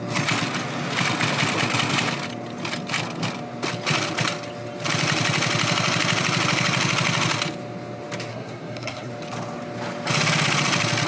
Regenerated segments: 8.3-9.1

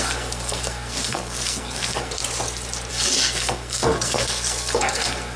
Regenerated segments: 0.0-2.2; 2.9-5.4

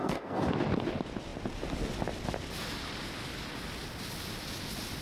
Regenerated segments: 0.0-0.5